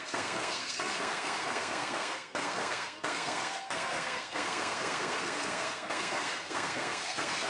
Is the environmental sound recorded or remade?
remade